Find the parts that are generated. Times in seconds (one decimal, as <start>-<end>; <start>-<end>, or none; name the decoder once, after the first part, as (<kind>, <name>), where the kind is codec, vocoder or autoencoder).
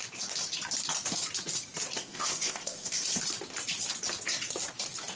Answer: 2.0-3.2 (codec, ZipCodec)